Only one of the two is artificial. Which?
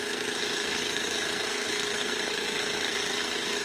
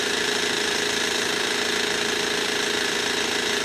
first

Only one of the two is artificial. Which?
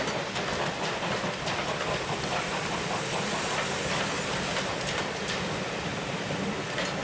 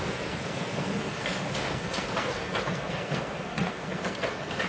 second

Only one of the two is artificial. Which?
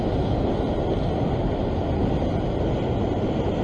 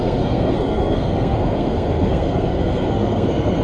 second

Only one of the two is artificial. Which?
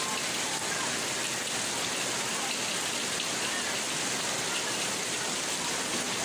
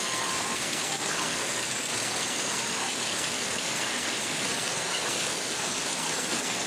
second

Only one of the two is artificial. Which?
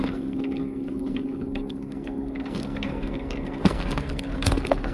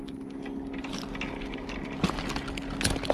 first